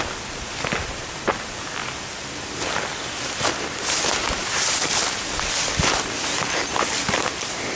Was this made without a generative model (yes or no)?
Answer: yes